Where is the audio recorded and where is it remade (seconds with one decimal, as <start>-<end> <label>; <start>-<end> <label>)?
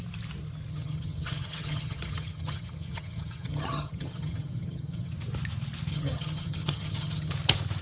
0.0-0.7 recorded; 0.7-5.1 remade; 5.1-5.9 recorded; 5.9-7.3 remade; 7.3-7.8 recorded